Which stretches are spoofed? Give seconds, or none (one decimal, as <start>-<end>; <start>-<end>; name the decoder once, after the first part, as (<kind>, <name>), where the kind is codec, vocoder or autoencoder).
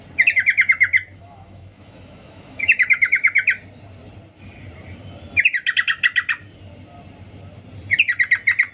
1.1-3.3 (autoencoder, DAC-VAE)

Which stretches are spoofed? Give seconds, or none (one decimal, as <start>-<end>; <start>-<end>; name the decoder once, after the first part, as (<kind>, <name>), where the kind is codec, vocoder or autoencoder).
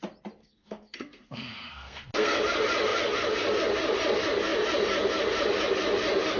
0.4-2.4 (codec, SNAC)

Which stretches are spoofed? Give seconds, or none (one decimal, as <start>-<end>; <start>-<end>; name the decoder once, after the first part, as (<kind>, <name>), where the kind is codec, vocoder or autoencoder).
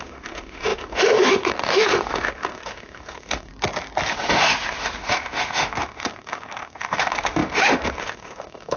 0.0-3.5 (autoencoder, DAC-VAE); 4.1-8.8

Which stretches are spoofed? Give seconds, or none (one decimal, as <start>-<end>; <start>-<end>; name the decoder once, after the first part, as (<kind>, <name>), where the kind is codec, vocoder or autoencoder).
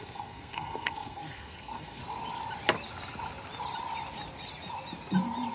0.0-2.0 (codec, SNAC)